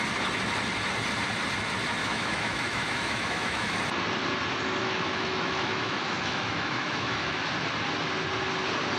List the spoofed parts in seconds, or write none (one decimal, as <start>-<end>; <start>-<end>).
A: 2.0-3.8; 4.8-7.4